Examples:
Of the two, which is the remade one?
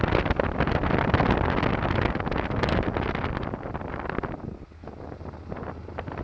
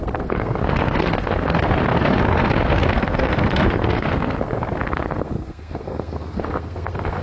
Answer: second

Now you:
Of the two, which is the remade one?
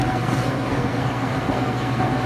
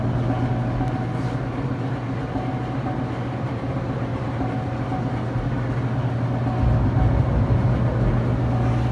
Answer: first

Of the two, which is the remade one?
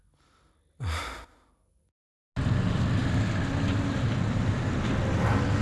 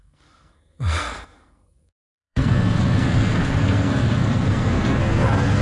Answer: second